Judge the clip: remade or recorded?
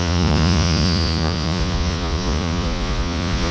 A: remade